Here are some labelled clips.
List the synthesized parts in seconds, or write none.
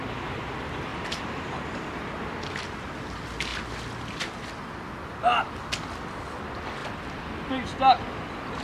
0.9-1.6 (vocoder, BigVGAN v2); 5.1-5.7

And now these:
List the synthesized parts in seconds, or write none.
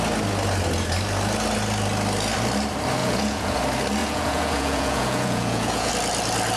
3.0-3.6 (vocoder, Vocos); 4.0-5.9